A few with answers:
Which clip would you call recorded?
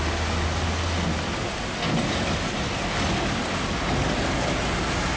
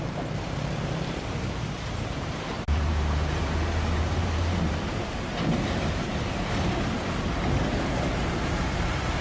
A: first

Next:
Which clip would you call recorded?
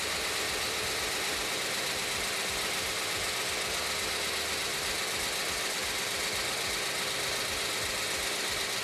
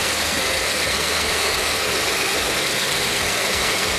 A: first